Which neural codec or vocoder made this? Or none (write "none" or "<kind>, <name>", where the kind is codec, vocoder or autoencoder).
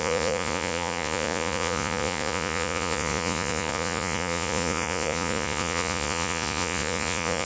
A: vocoder, Vocos